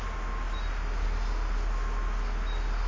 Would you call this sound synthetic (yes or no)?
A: no